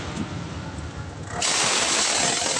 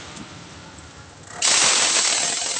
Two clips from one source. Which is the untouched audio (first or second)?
first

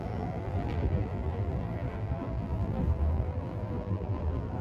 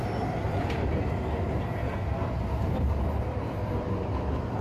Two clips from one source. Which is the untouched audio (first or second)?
second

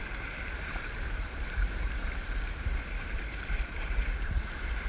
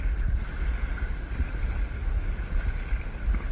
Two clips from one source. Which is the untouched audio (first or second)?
second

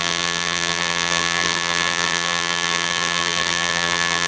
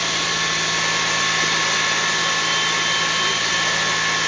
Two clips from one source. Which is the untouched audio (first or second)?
second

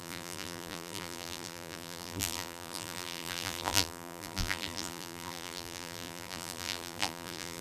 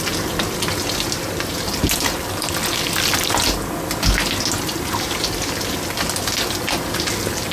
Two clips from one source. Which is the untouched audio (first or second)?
second